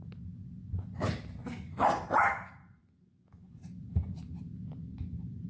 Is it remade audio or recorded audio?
recorded